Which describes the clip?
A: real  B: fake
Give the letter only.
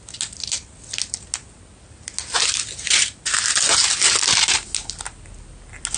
A